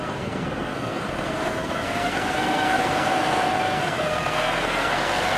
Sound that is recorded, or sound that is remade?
remade